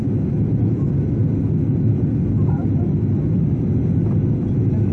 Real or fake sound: real